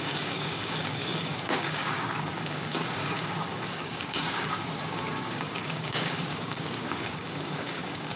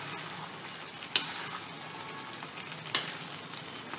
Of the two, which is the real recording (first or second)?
second